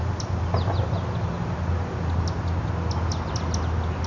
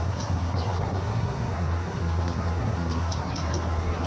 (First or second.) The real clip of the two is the first